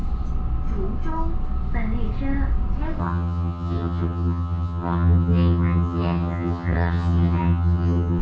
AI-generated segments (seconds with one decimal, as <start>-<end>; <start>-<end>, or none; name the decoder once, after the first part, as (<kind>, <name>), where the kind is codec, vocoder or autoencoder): 3.0-8.2 (vocoder, HiFi-GAN)